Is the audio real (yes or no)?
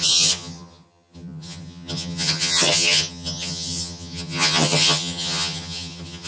no